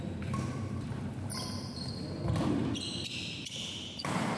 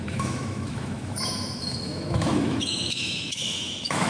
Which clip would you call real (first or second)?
first